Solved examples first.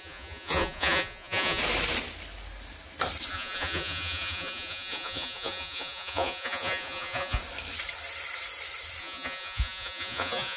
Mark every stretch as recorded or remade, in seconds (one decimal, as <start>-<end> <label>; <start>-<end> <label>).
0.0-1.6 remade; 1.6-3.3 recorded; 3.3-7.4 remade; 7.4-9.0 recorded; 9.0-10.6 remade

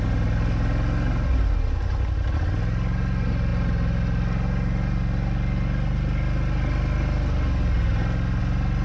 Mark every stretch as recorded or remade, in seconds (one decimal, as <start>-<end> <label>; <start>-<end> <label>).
0.0-8.8 recorded

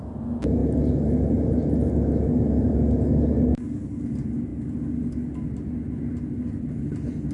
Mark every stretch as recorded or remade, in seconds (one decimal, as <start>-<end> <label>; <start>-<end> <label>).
0.0-7.3 recorded

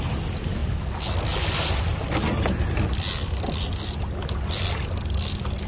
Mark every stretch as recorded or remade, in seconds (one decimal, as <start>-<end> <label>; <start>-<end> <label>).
0.0-5.7 recorded